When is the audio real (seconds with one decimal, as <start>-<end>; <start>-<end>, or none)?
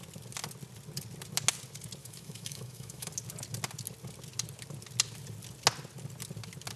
0.0-2.0; 3.1-6.8